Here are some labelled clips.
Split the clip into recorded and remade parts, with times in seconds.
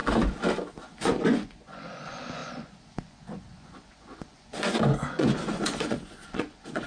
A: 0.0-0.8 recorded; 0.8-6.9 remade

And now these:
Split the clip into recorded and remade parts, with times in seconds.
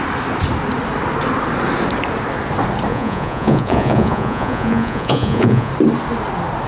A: 0.0-2.9 recorded; 2.9-5.7 remade; 5.7-6.7 recorded